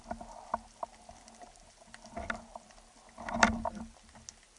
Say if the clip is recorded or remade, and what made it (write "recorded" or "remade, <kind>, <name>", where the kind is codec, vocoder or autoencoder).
recorded